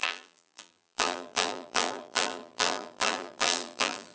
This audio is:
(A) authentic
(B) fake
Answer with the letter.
B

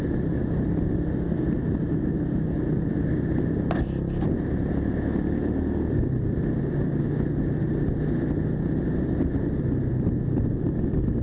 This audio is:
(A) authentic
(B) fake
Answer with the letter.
A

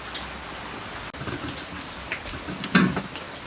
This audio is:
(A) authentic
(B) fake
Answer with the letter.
A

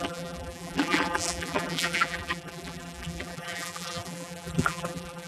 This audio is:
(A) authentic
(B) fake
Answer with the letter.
B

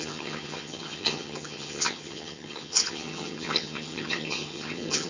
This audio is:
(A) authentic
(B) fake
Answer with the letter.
B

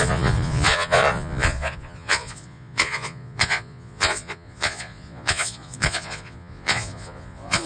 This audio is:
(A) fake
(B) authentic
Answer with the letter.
A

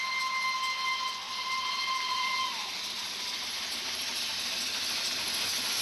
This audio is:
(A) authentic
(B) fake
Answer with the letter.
A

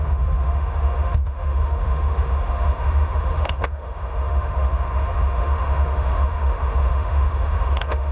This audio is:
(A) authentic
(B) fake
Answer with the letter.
B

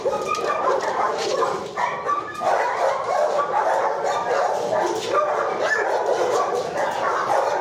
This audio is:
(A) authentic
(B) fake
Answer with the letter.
B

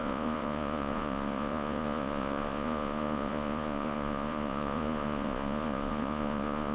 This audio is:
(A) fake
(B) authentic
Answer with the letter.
A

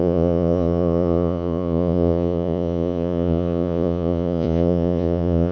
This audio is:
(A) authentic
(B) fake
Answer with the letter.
B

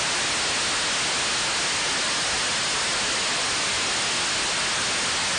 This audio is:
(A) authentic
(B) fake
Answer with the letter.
A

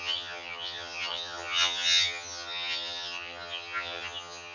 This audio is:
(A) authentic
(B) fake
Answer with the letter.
B